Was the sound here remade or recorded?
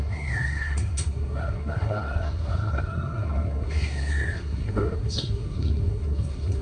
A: remade